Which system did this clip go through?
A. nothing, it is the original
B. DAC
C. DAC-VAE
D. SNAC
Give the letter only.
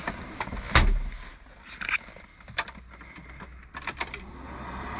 A